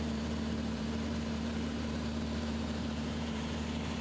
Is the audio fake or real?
fake